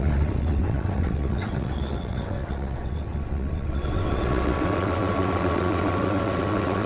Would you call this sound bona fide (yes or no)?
no